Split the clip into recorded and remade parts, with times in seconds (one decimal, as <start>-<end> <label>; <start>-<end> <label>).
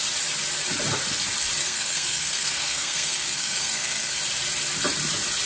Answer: 0.0-1.6 recorded; 1.6-4.2 remade; 4.2-5.5 recorded